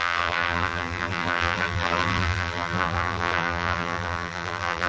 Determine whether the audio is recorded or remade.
remade